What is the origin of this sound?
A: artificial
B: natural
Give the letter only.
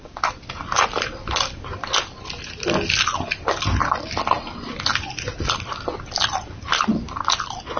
B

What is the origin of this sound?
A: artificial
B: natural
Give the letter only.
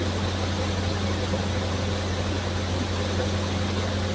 B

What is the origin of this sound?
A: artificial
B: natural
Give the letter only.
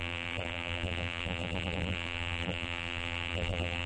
A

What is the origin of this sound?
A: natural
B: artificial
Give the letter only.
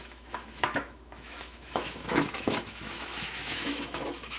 B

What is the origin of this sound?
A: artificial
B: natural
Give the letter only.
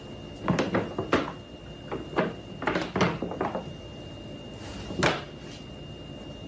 B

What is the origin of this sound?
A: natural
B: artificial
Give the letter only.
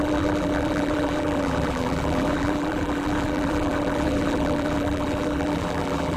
B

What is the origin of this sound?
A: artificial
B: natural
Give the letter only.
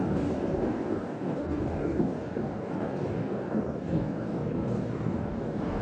A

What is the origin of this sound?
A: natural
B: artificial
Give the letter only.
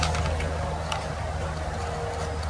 A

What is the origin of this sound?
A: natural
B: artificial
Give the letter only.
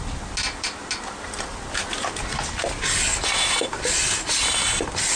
A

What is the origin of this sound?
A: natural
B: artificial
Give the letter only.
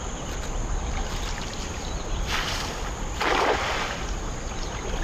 B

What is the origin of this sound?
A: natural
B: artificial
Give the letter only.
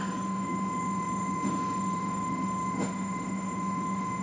B